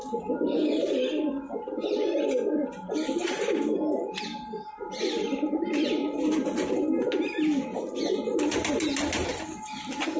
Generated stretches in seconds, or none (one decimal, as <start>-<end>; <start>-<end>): 2.0-2.9